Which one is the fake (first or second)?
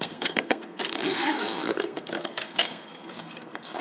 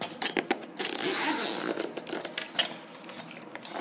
first